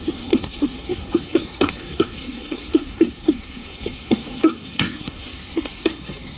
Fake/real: fake